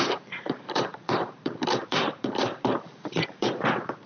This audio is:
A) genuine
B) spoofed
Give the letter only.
B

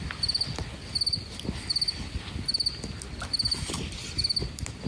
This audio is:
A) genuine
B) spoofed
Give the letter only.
A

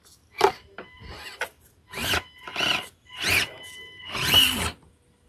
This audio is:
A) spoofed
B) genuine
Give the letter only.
B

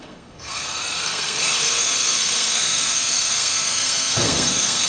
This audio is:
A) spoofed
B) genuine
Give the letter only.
A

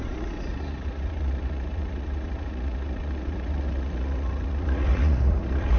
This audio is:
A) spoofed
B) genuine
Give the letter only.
A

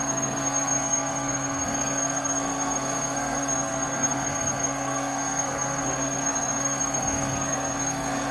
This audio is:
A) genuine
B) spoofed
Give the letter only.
B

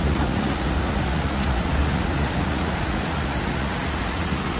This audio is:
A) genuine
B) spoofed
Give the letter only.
B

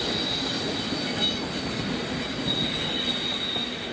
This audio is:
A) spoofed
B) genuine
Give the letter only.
B